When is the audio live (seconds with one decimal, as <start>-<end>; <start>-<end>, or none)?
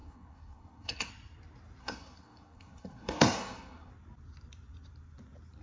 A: 1.1-1.8; 3.9-5.6